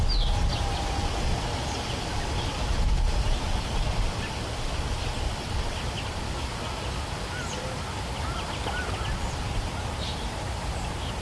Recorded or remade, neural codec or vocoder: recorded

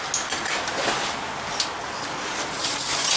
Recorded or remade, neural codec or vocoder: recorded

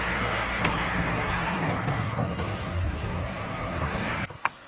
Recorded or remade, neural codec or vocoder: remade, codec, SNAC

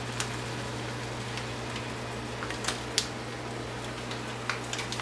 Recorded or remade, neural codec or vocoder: recorded